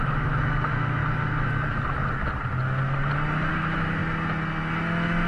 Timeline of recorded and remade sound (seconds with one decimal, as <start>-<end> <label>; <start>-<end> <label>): 0.0-1.0 remade; 1.0-3.5 recorded; 3.5-4.0 remade; 4.0-5.3 recorded